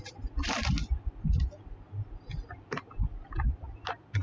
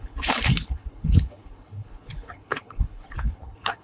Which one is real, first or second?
first